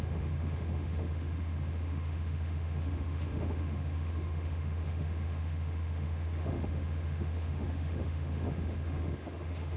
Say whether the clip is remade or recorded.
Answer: remade